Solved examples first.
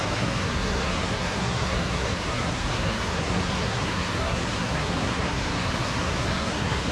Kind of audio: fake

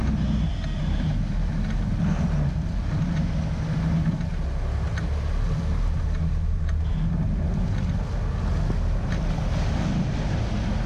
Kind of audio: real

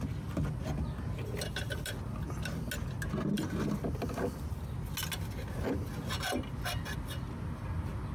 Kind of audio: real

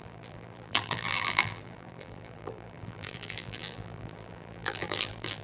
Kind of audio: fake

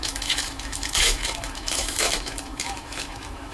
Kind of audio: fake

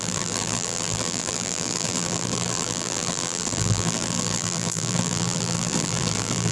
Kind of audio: fake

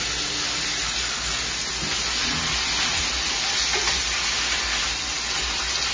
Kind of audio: real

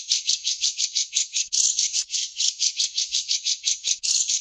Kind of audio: fake